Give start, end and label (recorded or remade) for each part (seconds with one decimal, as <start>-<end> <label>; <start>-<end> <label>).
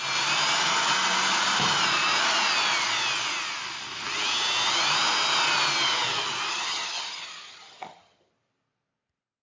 0.0-6.5 recorded; 6.5-8.3 remade; 8.3-9.4 recorded